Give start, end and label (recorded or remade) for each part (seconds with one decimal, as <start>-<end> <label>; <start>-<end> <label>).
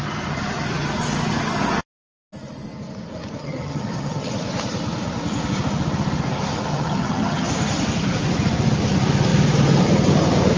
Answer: 0.0-3.4 recorded; 3.4-4.3 remade; 4.3-6.7 recorded; 6.7-7.5 remade; 7.5-10.6 recorded